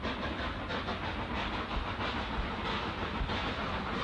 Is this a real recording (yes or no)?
yes